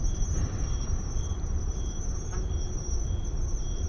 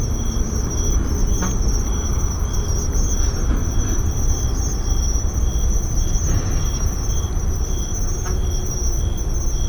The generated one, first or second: first